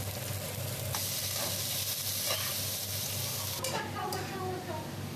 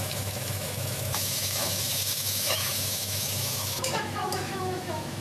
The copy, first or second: second